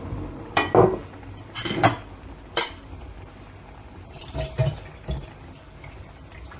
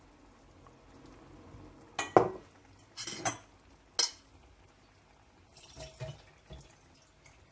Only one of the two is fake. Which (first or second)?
first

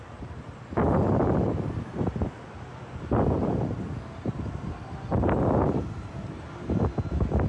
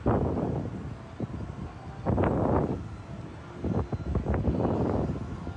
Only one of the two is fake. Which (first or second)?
first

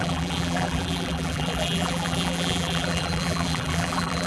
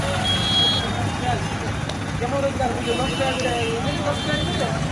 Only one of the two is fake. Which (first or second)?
first